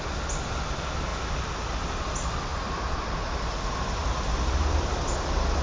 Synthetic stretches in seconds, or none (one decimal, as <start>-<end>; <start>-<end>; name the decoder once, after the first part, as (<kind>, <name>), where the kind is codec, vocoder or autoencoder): 4.0-4.6 (vocoder, BigVGAN v2)